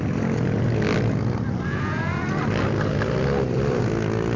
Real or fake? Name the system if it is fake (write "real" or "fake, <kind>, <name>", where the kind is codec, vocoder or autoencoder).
real